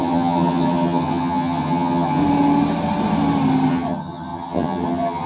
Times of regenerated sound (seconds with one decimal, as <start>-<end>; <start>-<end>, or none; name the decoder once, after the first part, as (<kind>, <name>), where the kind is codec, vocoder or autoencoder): 0.0-2.2 (vocoder, HiFi-GAN); 3.7-5.3